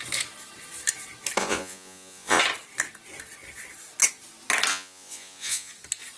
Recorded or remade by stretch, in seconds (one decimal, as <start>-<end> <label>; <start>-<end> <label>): 0.0-1.4 recorded; 1.4-2.4 remade; 2.4-4.7 recorded; 4.7-5.7 remade; 5.7-6.2 recorded